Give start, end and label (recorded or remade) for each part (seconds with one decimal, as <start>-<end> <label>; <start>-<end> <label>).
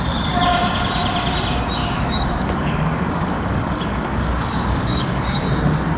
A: 0.0-1.8 recorded; 1.8-5.4 remade; 5.4-6.0 recorded